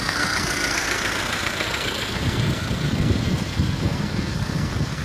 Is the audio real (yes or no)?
no